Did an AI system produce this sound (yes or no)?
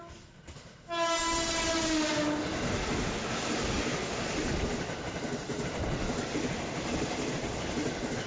no